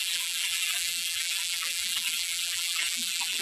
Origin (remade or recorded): remade